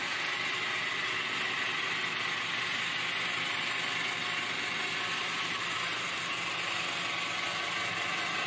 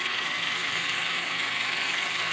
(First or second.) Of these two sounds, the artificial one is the second